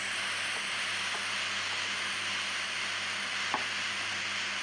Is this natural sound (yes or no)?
yes